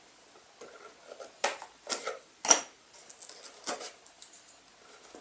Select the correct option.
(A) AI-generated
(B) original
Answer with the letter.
B